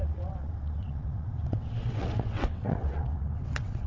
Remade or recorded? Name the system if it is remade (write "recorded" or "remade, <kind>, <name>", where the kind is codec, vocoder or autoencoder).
remade, vocoder, WaveNeXt